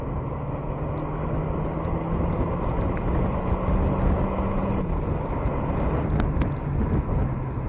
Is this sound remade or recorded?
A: recorded